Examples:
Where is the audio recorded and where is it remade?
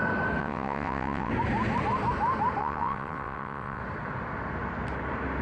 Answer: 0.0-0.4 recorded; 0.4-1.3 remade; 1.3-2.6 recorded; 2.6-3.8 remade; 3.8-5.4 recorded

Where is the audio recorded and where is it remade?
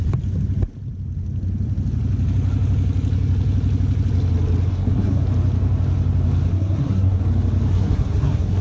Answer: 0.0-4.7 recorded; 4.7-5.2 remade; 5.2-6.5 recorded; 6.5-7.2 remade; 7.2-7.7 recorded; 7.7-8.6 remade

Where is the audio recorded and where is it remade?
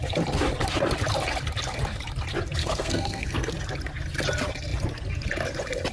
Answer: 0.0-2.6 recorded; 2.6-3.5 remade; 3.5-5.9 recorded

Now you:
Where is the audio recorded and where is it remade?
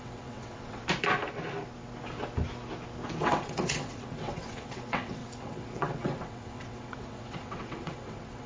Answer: 0.0-0.8 remade; 0.8-3.2 recorded; 3.2-8.5 remade